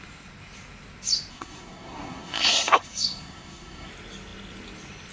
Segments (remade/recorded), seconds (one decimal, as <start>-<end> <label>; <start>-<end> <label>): 0.0-1.3 recorded; 1.3-3.9 remade; 3.9-5.1 recorded